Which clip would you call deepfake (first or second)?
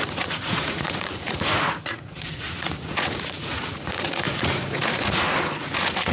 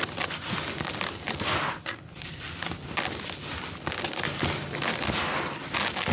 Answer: first